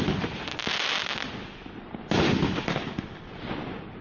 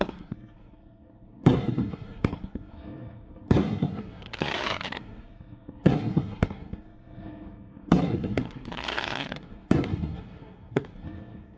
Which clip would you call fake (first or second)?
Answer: second